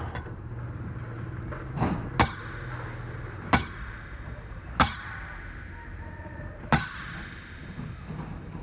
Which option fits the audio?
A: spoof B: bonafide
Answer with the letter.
B